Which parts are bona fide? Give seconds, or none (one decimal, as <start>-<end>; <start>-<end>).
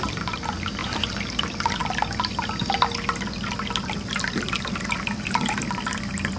0.0-6.4